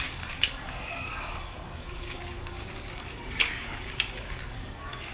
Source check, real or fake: fake